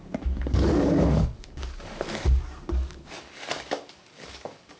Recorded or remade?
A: remade